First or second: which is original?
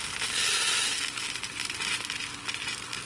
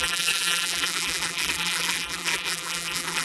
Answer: first